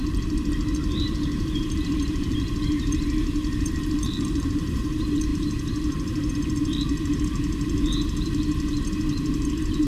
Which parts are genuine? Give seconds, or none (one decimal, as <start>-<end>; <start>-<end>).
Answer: none